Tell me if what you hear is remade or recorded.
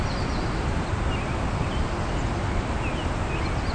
recorded